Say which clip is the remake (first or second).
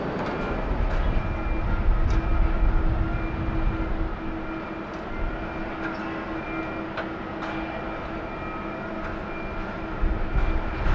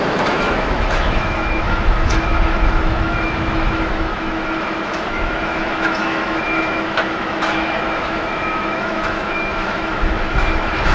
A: second